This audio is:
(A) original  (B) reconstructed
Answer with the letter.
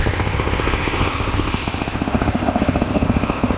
B